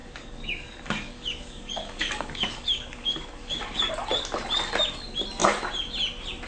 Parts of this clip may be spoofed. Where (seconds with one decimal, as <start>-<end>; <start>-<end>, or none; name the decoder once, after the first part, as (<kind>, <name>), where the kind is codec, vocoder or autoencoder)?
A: 0.0-3.9 (codec, DAC)